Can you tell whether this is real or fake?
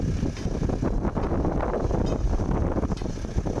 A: real